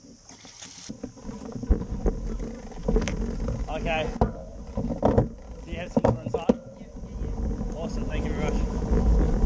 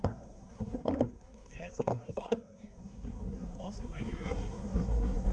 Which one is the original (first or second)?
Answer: first